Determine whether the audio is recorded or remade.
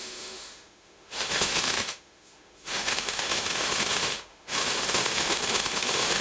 remade